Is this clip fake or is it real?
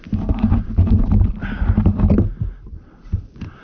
real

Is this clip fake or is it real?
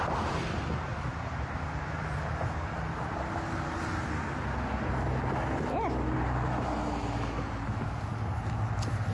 real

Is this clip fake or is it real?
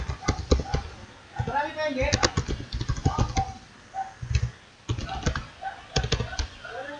real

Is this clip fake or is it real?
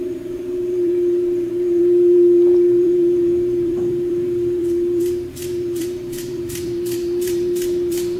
fake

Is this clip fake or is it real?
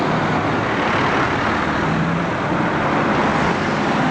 real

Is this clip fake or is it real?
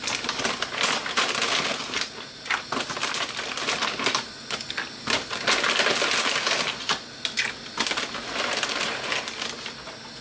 real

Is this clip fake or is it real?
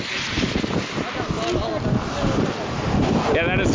real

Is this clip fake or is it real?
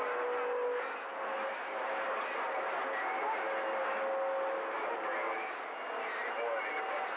real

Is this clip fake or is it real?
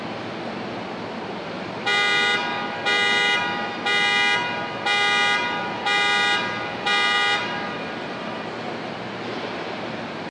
real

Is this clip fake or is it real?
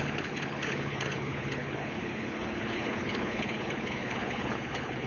fake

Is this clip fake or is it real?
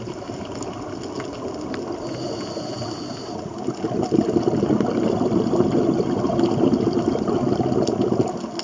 real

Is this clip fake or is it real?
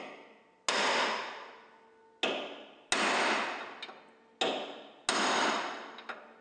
real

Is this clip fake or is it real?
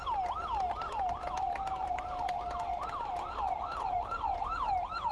real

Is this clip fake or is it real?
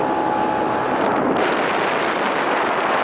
real